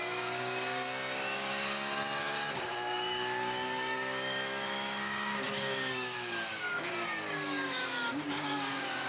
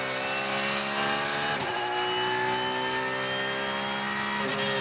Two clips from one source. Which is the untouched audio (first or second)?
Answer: second